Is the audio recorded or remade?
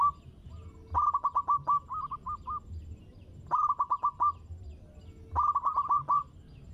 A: recorded